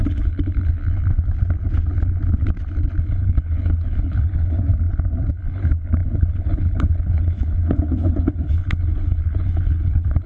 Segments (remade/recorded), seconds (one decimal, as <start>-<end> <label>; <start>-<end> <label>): 0.0-0.8 remade; 0.8-3.0 recorded; 3.0-4.7 remade; 4.7-5.3 recorded; 5.3-10.3 remade

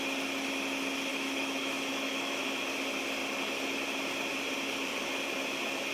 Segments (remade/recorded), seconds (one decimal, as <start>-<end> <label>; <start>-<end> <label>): 0.0-1.1 recorded; 1.1-2.6 remade; 2.6-5.9 recorded

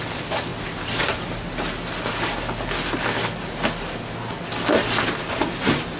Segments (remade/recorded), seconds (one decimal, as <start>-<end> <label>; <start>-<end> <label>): 0.0-6.0 recorded